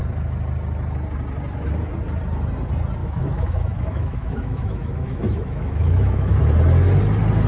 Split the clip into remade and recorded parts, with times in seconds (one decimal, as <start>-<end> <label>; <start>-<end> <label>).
0.0-3.0 recorded; 3.0-6.4 remade; 6.4-7.5 recorded